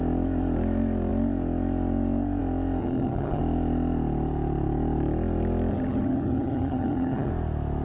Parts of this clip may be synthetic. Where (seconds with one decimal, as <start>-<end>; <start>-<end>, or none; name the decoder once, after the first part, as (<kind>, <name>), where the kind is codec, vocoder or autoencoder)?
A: 2.8-3.4 (vocoder, HiFi-GAN); 5.7-7.3